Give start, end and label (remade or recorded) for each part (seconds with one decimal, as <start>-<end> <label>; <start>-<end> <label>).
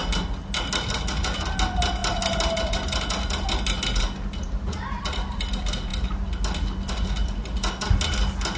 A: 0.0-8.6 recorded